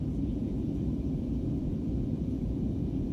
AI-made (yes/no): yes